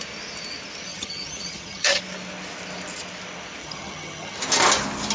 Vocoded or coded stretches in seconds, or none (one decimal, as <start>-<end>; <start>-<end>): 0.9-2.0; 3.6-4.4